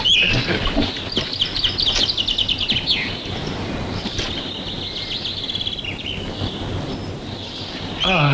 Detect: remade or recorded recorded